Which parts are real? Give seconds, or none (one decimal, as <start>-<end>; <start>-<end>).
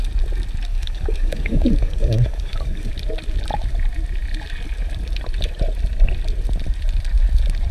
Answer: 0.0-0.7; 2.9-7.7